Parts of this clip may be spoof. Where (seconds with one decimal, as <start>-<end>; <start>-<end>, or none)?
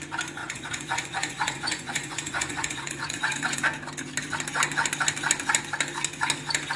0.4-3.6